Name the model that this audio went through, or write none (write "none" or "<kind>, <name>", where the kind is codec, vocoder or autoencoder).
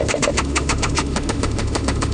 autoencoder, DAC-VAE